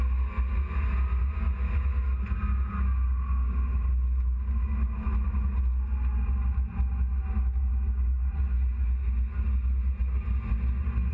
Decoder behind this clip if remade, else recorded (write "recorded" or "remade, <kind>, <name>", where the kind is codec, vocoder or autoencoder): recorded